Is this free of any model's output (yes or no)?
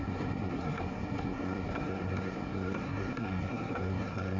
no